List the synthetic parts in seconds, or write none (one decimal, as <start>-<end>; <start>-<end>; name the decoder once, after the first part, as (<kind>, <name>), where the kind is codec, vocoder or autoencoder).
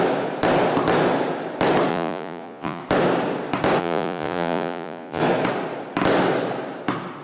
1.9-2.8 (vocoder, Vocos); 3.8-5.2